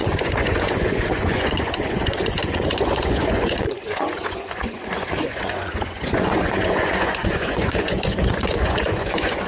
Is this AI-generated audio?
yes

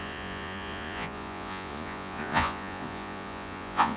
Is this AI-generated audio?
yes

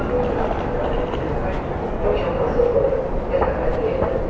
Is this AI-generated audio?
no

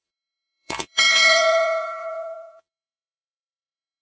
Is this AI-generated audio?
yes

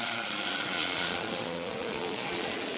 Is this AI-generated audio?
yes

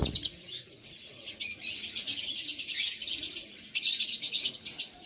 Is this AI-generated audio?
yes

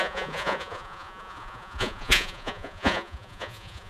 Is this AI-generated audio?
yes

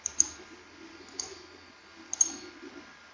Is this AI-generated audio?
no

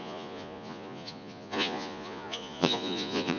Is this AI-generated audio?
yes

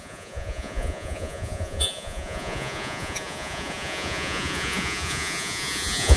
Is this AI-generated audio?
yes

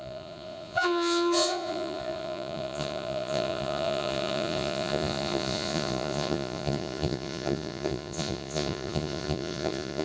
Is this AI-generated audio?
yes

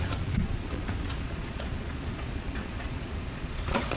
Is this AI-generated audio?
yes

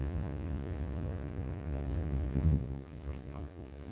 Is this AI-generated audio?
yes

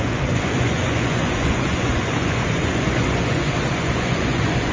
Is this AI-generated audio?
yes